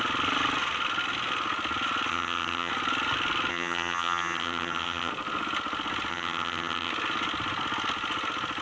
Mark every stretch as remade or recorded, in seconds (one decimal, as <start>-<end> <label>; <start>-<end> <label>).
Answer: 0.0-2.1 recorded; 2.1-2.7 remade; 2.7-3.5 recorded; 3.5-5.1 remade; 5.1-6.1 recorded; 6.1-6.9 remade; 6.9-8.6 recorded